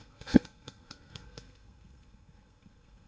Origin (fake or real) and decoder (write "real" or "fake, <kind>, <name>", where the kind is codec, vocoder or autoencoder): fake, codec, SNAC